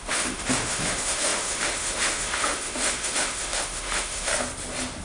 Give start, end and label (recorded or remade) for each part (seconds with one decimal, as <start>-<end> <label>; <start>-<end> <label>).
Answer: 0.0-4.3 remade; 4.3-5.0 recorded